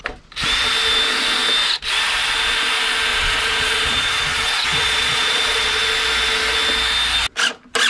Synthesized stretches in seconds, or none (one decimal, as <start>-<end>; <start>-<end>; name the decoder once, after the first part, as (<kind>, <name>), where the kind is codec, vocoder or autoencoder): 3.1-5.8 (vocoder, Vocos)

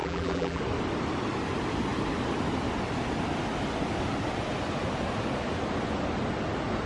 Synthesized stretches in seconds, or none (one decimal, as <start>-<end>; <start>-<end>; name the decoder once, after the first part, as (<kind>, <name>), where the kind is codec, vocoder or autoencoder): 0.0-0.6 (vocoder, BigVGAN v2)

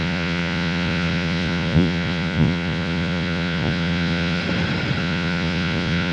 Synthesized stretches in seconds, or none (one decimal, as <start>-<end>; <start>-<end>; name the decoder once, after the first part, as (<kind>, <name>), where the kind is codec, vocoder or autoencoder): 0.0-4.4 (vocoder, Vocos); 5.0-6.1